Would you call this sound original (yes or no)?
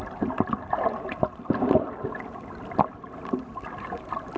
yes